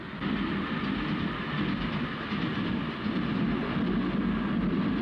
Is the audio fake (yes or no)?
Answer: no